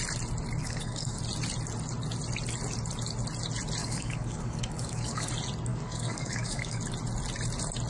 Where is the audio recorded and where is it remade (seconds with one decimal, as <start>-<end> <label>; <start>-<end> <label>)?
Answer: 0.0-0.6 recorded; 0.6-1.2 remade; 1.2-3.8 recorded; 3.8-5.3 remade; 5.3-5.7 recorded; 5.7-6.8 remade; 6.8-7.9 recorded